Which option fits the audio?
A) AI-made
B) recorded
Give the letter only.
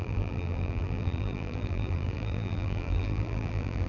A